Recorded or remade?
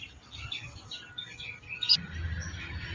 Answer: recorded